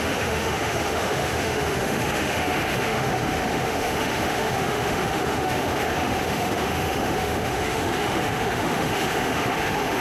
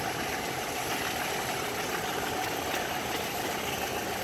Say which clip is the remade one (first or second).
first